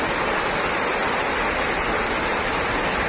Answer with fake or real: real